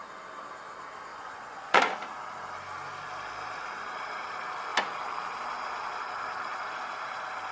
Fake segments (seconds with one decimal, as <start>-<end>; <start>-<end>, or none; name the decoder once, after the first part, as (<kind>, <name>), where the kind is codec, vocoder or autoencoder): 1.1-1.8 (vocoder, Vocos)